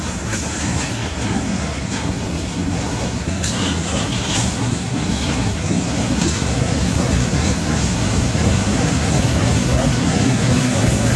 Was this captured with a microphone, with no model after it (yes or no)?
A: no